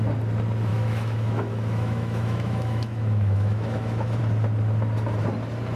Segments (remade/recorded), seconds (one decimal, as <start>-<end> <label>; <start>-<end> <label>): 0.0-0.7 recorded; 0.7-4.2 remade; 4.2-5.8 recorded